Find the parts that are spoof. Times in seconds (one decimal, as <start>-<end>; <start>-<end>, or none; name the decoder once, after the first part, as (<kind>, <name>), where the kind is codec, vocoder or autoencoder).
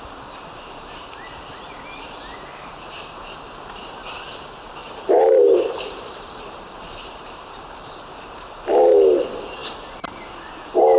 4.8-8.5 (vocoder, BigVGAN v2)